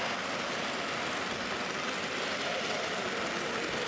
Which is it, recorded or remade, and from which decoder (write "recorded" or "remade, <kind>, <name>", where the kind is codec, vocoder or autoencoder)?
recorded